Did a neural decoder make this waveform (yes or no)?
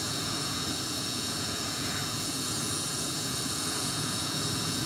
yes